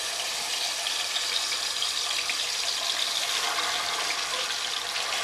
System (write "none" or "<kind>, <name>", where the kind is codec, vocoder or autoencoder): vocoder, BigVGAN v2